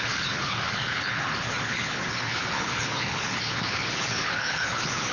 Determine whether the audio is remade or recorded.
remade